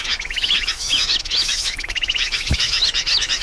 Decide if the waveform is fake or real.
fake